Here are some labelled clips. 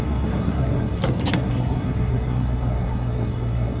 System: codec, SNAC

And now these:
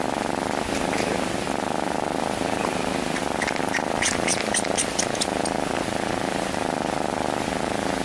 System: none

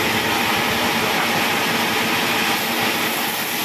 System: none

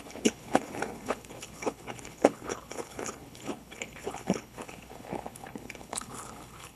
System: codec, HILCodec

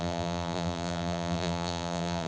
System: vocoder, BigVGAN v2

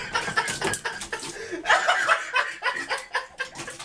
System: none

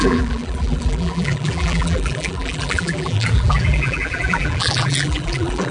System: vocoder, BigVGAN v2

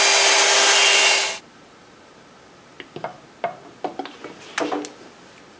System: none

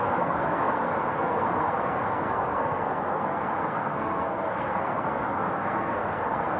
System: codec, SNAC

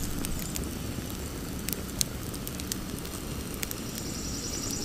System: none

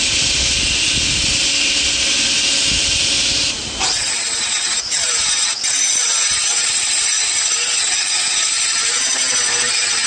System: none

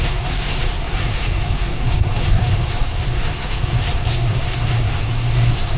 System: codec, SNAC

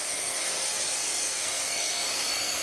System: codec, SNAC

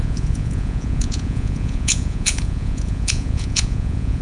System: vocoder, Vocos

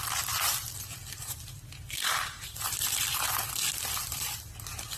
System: vocoder, BigVGAN v2